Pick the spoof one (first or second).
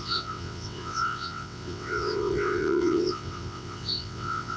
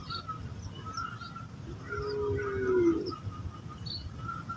first